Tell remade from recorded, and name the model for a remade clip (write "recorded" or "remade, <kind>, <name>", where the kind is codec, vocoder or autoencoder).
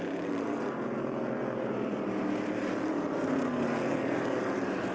recorded